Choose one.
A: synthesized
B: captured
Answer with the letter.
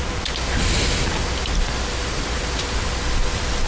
B